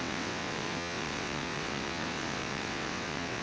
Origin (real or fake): fake